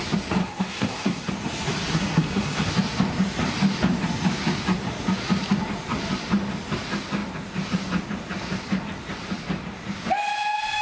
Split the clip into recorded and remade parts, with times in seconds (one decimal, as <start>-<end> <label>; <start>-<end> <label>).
0.0-0.4 recorded; 0.4-1.3 remade; 1.3-1.9 recorded; 1.9-2.7 remade; 2.7-10.8 recorded